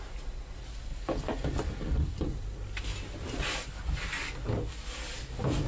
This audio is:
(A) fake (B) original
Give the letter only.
B